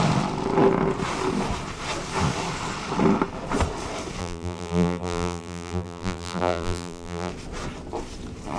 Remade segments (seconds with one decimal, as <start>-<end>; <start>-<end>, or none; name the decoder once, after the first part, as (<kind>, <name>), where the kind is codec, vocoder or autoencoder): 4.2-7.3 (vocoder, BigVGAN v2)